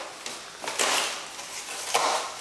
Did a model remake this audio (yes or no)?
no